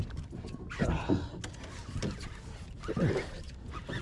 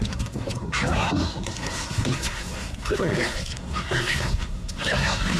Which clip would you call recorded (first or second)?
first